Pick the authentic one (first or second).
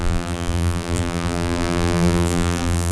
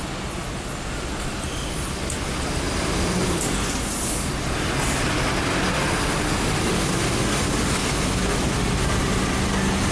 second